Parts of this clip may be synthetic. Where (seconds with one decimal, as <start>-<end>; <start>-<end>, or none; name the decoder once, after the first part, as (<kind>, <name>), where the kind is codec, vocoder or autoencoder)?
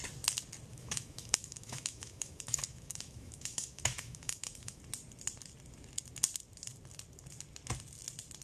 0.7-4.8 (autoencoder, DAC-VAE)